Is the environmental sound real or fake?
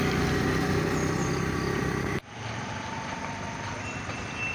real